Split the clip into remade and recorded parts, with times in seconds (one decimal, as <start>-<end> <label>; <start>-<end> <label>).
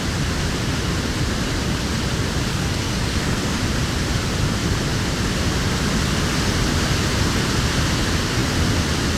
0.0-2.5 recorded; 2.5-3.6 remade; 3.6-9.2 recorded